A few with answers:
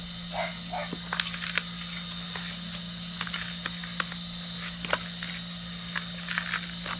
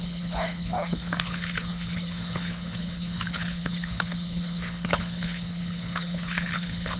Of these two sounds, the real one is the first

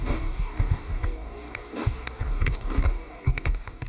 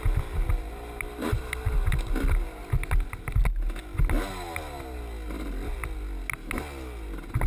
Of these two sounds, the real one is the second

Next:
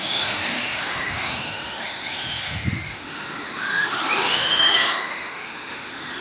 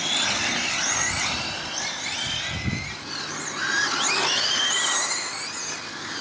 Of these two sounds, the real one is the second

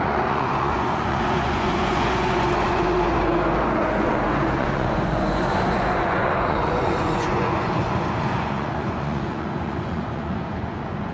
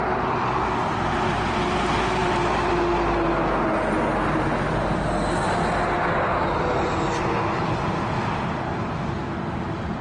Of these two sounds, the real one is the second